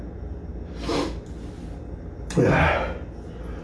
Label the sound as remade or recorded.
recorded